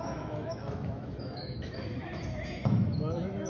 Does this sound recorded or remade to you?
remade